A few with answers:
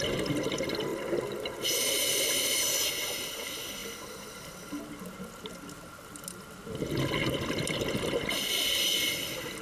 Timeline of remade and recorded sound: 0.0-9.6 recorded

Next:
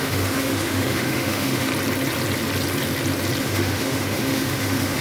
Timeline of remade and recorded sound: 0.0-1.7 remade; 1.7-3.4 recorded; 3.4-5.0 remade

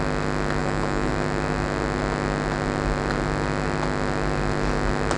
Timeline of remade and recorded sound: 0.0-0.6 recorded; 0.6-1.1 remade; 1.1-5.2 recorded